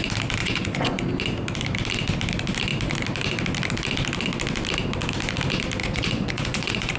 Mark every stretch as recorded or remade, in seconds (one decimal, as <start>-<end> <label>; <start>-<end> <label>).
0.0-0.4 recorded; 0.4-1.1 remade; 1.1-5.8 recorded; 5.8-7.0 remade